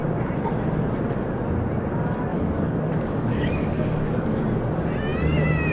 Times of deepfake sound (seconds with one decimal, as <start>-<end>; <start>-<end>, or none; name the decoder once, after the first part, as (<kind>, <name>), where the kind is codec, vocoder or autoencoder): 2.3-4.4 (codec, DAC)